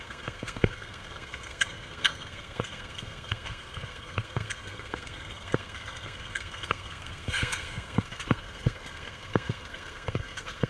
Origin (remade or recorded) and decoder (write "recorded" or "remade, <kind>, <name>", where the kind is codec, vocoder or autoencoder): remade, codec, SNAC